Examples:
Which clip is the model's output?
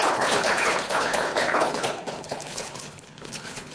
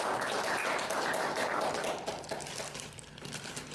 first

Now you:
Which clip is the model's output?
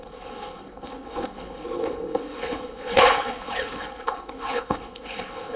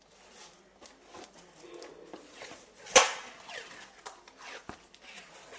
first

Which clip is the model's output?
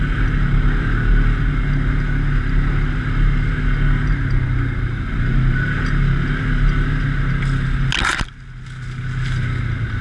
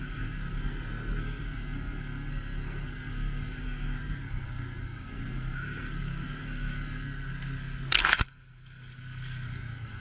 second